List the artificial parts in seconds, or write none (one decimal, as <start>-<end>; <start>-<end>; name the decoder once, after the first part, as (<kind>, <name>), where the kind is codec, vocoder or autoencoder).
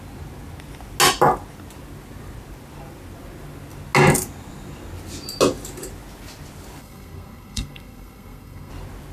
6.8-8.7 (codec, SNAC)